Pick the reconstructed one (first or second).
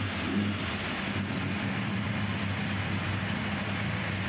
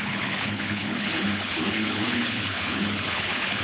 second